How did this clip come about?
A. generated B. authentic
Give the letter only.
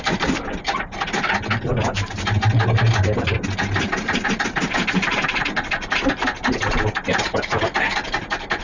B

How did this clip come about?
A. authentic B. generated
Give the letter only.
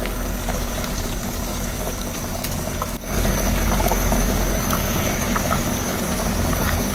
B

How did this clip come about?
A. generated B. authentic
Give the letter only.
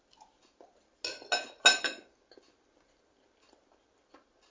B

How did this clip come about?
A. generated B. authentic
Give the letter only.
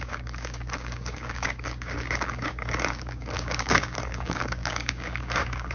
A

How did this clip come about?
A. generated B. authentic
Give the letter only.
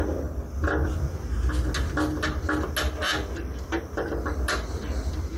B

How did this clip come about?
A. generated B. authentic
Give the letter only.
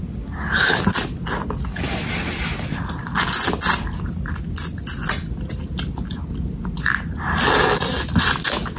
B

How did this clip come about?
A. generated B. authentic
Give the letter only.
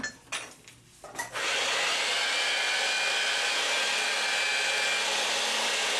B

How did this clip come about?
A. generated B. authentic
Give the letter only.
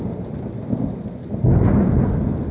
B